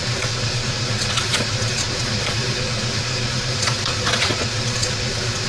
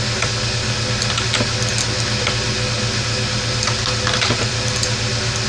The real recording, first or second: second